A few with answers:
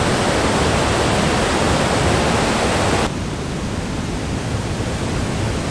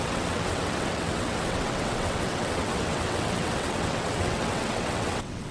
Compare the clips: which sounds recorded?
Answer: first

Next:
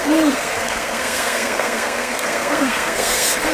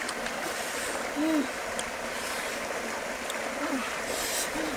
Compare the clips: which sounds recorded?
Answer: second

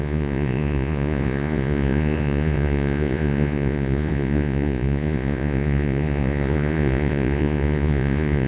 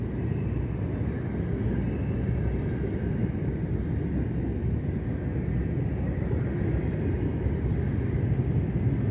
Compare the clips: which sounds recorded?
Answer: second